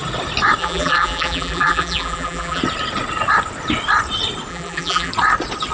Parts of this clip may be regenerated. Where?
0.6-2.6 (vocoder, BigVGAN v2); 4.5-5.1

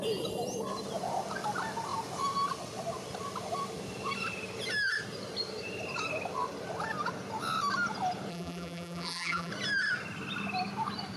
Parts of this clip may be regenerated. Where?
8.3-9.5 (vocoder, BigVGAN v2)

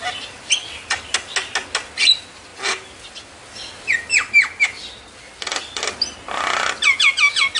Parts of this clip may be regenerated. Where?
2.5-5.8 (vocoder, BigVGAN v2)

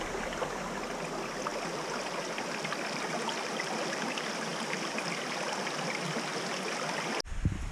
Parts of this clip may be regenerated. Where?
none